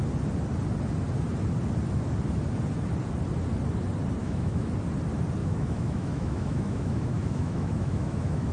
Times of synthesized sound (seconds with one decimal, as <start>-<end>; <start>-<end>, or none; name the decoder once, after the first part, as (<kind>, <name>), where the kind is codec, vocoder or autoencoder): 4.2-4.7 (autoencoder, DAC-VAE); 5.4-8.5